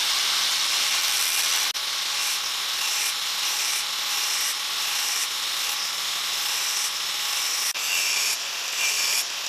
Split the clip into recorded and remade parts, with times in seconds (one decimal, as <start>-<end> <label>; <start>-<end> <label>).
0.0-9.5 recorded